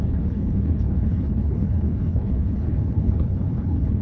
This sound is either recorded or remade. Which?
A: remade